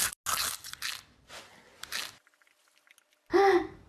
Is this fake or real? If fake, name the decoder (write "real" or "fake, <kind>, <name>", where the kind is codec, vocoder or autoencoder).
real